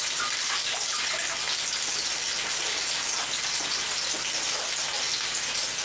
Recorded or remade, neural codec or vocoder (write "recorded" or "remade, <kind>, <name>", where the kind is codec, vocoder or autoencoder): recorded